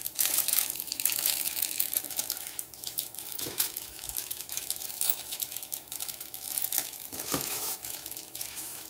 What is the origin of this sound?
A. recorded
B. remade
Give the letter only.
B